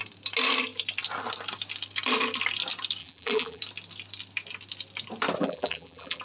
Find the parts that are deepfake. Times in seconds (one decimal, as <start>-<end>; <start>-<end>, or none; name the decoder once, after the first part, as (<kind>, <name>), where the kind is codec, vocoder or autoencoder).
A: 3.0-3.6 (vocoder, BigVGAN v2); 5.4-6.2